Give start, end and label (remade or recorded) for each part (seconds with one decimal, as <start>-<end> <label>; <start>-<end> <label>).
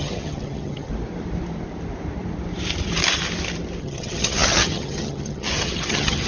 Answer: 0.0-0.9 remade; 0.9-3.8 recorded; 3.8-6.3 remade